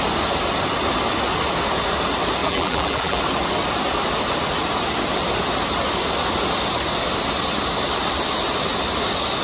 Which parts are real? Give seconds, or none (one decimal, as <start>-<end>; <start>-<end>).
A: 0.0-2.4; 3.2-9.4